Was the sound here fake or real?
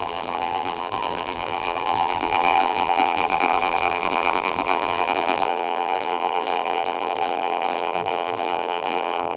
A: fake